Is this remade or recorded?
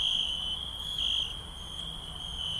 recorded